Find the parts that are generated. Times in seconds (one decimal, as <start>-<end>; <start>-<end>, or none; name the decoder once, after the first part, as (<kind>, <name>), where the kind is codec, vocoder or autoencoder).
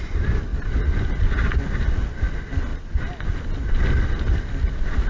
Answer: none